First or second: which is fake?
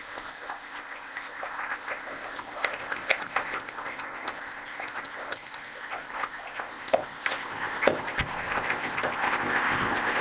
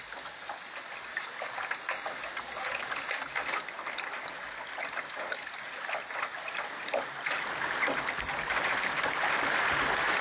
first